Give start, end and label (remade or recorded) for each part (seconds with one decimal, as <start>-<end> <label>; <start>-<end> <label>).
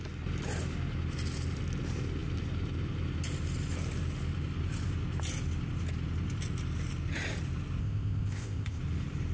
0.0-7.8 recorded; 7.8-8.8 remade; 8.8-9.3 recorded